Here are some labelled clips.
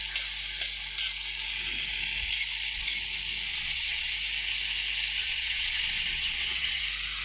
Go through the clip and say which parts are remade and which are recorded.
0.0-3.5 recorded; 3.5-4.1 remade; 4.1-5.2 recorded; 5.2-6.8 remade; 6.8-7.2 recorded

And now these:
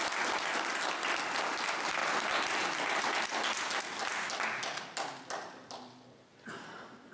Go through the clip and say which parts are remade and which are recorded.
0.0-7.1 recorded

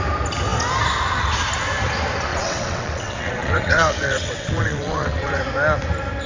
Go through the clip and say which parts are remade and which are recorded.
0.0-2.3 recorded; 2.3-5.4 remade; 5.4-6.3 recorded

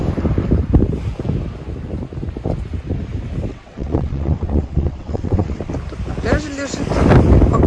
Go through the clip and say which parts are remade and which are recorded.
0.0-3.5 recorded; 3.5-5.7 remade; 5.7-7.7 recorded

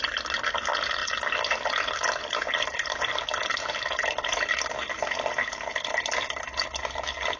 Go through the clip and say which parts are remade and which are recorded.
0.0-7.4 recorded